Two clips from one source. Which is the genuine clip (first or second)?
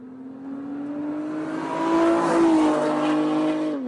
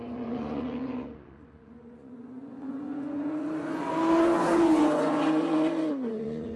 first